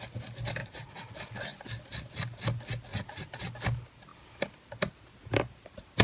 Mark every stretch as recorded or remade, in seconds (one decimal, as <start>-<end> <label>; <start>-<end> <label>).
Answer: 0.0-0.6 recorded; 0.6-1.1 remade; 1.1-2.9 recorded; 2.9-3.5 remade; 3.5-6.0 recorded